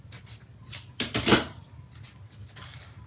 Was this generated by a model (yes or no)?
no